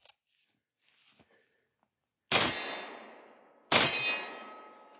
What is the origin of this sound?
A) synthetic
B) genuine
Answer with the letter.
B